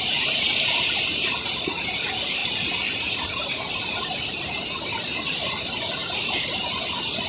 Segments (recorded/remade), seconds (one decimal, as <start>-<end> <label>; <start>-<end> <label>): 0.0-7.3 remade